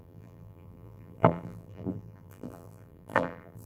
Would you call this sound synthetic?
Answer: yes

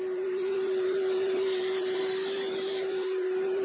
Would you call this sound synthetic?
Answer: yes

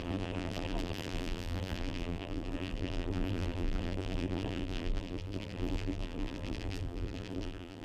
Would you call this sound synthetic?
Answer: yes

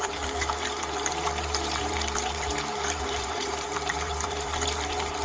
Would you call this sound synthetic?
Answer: yes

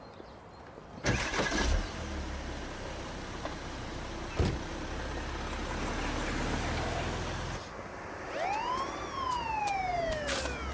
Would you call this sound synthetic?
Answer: no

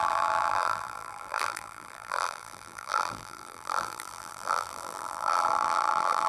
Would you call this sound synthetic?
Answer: yes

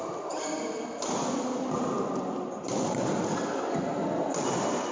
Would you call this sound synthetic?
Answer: no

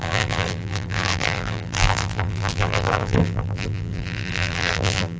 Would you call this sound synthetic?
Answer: yes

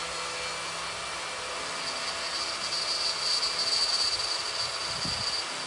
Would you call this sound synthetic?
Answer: no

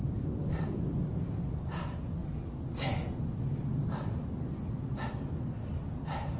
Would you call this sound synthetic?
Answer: no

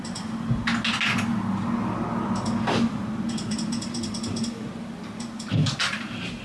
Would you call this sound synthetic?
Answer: no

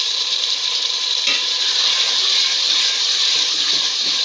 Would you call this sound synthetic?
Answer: yes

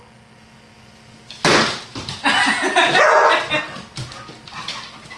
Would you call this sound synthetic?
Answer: no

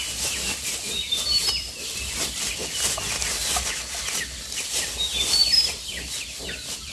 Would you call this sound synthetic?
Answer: yes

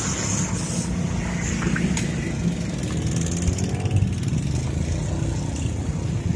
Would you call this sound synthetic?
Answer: no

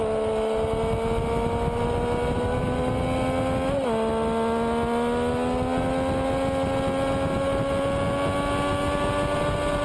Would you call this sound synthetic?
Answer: no